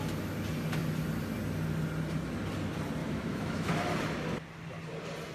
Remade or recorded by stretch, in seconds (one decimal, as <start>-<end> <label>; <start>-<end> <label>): 0.0-3.0 recorded; 3.0-3.7 remade; 3.7-5.3 recorded